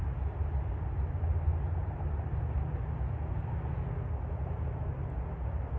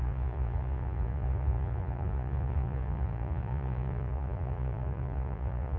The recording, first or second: first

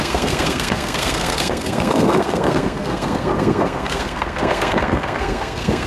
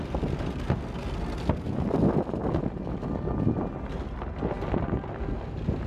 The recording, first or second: second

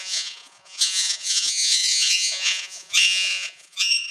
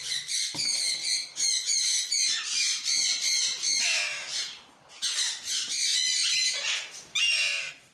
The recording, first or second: second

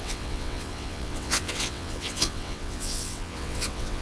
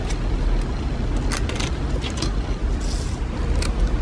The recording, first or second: second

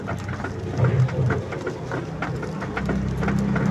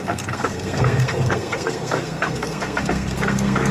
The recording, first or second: first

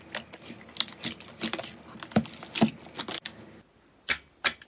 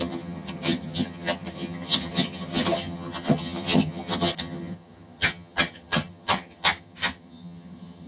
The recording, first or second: first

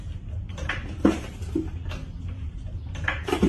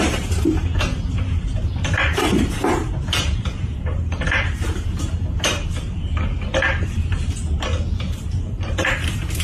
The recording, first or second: first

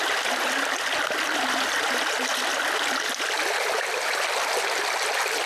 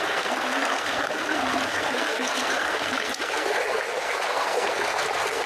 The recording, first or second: first